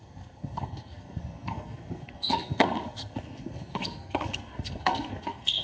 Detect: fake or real fake